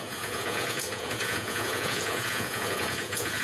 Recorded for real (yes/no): no